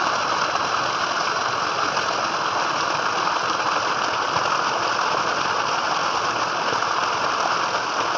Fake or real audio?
real